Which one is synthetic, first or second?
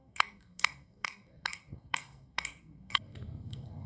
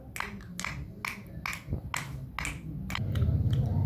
first